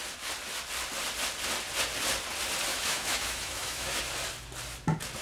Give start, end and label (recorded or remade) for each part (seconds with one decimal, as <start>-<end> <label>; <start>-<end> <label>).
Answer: 0.0-2.7 recorded; 2.7-4.0 remade; 4.0-5.2 recorded